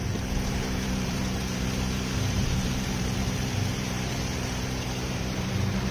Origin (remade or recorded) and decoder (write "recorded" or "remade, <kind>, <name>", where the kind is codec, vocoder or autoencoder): remade, vocoder, BigVGAN v2